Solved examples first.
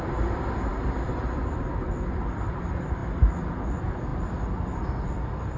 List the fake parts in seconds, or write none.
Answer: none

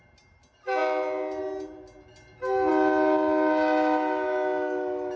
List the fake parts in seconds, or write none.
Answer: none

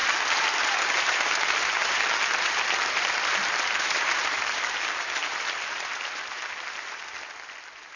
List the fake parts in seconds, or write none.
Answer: 5.2-6.4 (vocoder, BigVGAN v2)